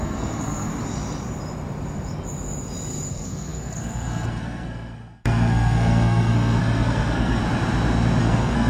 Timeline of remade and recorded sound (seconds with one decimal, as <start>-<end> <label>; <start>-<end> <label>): 0.0-0.7 remade; 0.7-3.1 recorded; 3.1-7.4 remade; 7.4-8.2 recorded; 8.2-8.7 remade